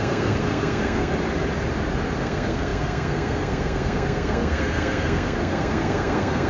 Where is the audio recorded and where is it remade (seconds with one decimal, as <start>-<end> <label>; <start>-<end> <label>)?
0.0-1.1 remade; 1.1-2.2 recorded; 2.2-6.5 remade